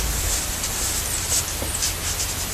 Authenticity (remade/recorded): recorded